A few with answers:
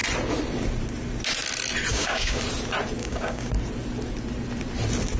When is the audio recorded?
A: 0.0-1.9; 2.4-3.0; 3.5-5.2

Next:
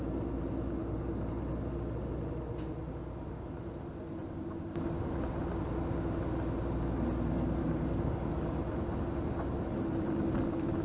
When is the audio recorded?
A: 0.0-0.8; 1.3-7.6; 8.3-10.8

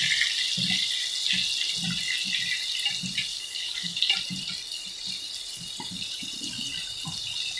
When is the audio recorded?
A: 0.0-3.3; 4.0-7.6

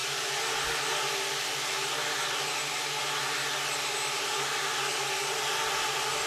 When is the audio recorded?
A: 0.0-6.3

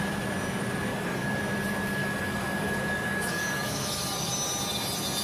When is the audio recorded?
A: 0.0-0.9; 1.4-2.0; 4.3-5.2

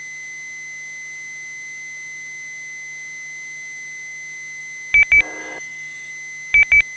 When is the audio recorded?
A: 0.0-5.4; 6.1-7.0